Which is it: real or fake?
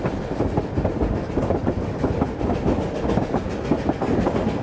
real